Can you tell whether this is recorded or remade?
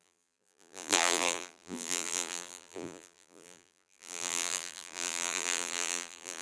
remade